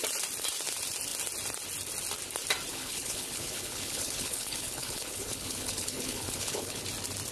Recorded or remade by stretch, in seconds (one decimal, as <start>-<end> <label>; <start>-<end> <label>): 0.0-2.7 recorded; 2.7-6.8 remade; 6.8-7.3 recorded